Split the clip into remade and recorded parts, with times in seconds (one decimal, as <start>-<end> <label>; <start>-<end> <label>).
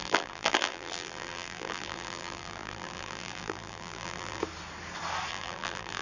0.0-4.4 remade; 4.4-5.3 recorded; 5.3-6.0 remade